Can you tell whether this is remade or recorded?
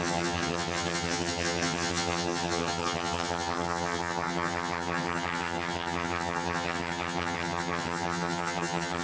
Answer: remade